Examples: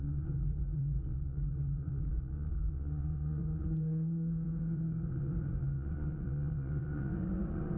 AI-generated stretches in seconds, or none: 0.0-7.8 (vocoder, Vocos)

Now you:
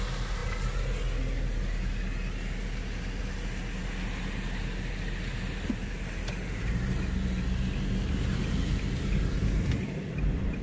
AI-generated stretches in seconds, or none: none